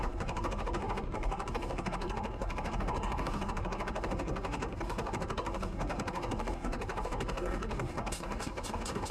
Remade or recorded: remade